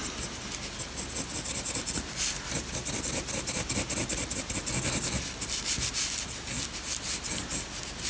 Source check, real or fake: real